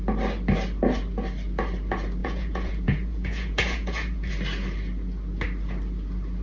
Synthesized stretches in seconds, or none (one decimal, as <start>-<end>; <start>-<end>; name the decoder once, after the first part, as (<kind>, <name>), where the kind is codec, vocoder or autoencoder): 2.2-4.3 (vocoder, Vocos)